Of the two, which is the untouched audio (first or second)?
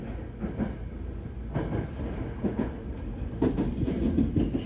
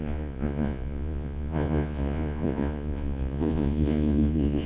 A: first